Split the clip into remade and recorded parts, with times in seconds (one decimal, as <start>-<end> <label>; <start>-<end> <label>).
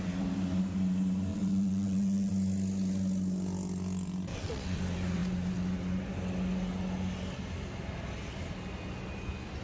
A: 0.0-1.3 recorded; 1.3-2.3 remade; 2.3-4.3 recorded; 4.3-4.8 remade; 4.8-9.6 recorded